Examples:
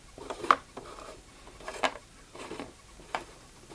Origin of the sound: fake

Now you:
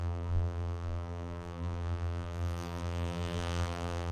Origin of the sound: fake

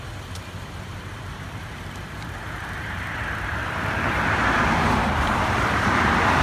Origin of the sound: fake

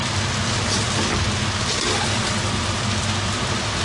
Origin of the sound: real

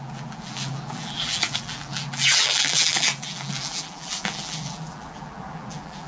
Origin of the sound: fake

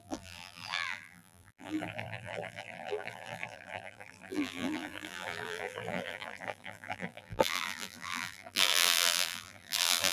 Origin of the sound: fake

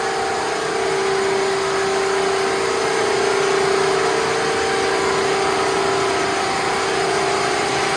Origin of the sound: real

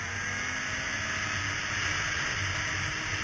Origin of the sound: real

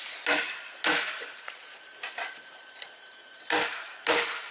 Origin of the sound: real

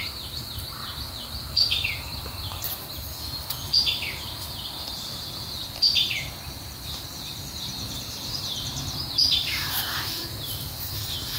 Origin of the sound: fake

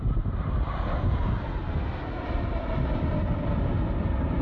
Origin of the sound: real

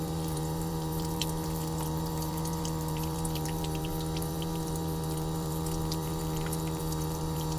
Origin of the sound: fake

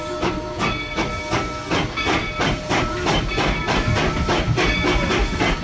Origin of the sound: real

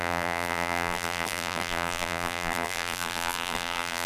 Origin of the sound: fake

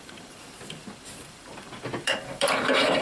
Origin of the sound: fake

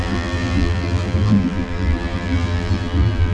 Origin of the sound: fake